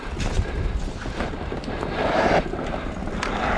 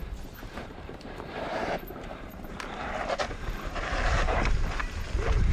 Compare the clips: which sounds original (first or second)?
first